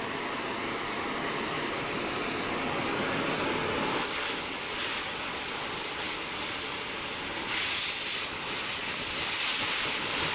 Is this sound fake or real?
real